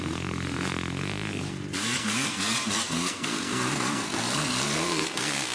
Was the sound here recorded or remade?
remade